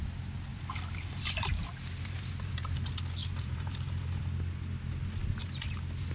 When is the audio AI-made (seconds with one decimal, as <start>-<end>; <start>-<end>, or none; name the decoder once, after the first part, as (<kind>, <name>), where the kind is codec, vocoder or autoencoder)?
0.5-2.5 (vocoder, BigVGAN v2); 3.2-4.2